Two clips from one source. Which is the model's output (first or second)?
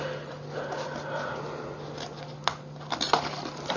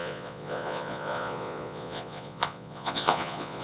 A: second